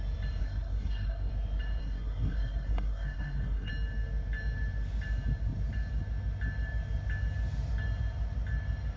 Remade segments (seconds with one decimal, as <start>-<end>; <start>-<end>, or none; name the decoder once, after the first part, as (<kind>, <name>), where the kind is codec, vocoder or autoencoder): 0.4-1.3 (codec, SNAC); 1.8-3.7